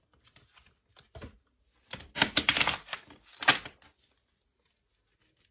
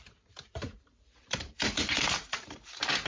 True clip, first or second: first